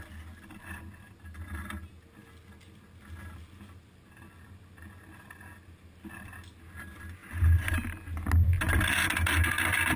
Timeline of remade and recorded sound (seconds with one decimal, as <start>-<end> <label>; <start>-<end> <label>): 0.0-10.0 recorded